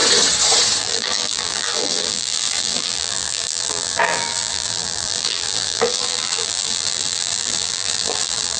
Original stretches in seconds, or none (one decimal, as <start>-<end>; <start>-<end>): 0.0-0.8